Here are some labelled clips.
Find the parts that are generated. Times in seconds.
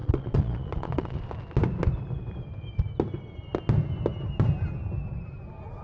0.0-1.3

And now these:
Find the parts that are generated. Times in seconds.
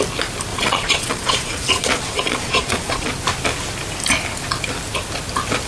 0.5-3.1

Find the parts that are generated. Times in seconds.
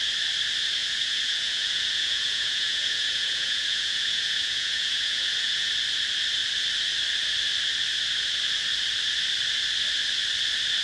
0.8-5.7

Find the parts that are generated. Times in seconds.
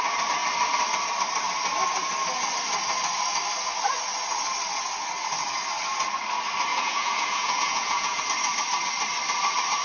6.7-8.2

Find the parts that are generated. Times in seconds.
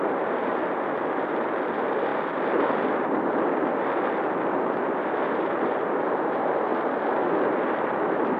none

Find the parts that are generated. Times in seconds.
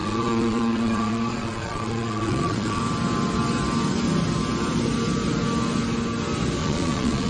0.0-2.8; 6.6-7.3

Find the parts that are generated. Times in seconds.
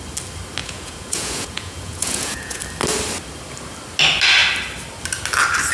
0.6-2.6